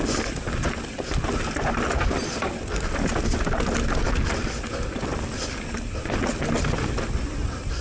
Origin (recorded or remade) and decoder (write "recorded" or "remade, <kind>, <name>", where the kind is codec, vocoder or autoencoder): recorded